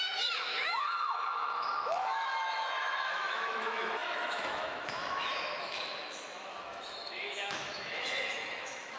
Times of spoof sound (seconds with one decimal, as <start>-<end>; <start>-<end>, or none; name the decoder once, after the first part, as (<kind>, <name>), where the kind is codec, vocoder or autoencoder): 0.0-9.0 (autoencoder, DAC-VAE)